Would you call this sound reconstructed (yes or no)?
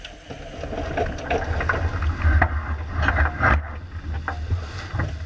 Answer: no